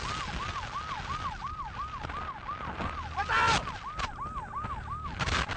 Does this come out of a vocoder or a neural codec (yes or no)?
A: no